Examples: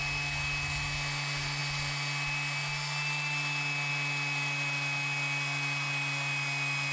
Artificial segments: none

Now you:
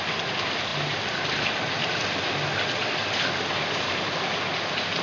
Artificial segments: none